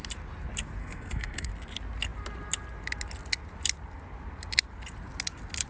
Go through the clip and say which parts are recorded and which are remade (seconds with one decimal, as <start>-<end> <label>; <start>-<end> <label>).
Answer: 0.0-0.8 recorded; 0.8-1.5 remade; 1.5-5.7 recorded